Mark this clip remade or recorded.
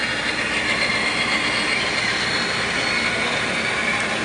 recorded